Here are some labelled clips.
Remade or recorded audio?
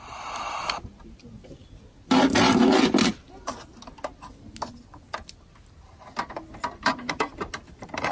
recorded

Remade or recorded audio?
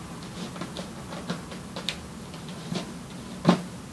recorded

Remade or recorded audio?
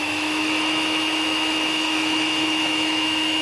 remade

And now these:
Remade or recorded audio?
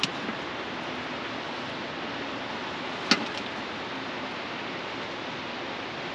recorded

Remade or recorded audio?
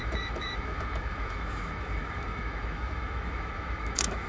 remade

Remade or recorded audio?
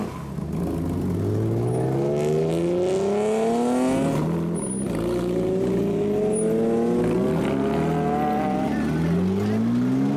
recorded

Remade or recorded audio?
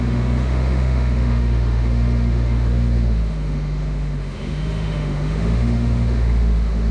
remade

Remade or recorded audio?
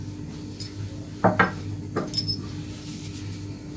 recorded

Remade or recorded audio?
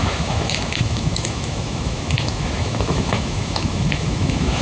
remade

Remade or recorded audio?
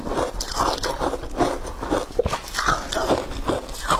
recorded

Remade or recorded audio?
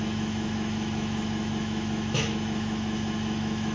remade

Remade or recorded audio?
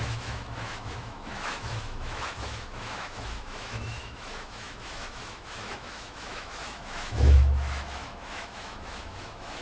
remade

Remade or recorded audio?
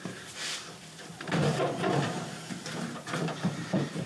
recorded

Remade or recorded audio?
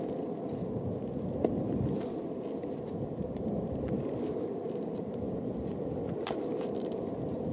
recorded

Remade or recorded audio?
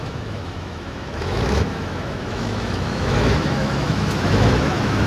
remade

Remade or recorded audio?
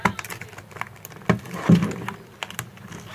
recorded